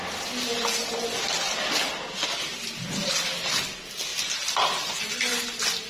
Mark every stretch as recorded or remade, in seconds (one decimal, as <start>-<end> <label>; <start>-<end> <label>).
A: 0.0-5.9 recorded